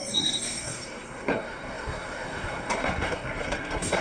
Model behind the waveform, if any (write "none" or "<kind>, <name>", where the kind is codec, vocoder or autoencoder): codec, SNAC